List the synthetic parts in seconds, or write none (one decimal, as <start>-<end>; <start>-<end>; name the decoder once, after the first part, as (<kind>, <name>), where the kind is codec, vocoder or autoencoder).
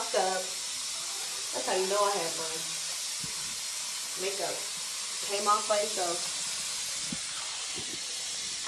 none